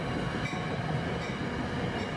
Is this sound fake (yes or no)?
no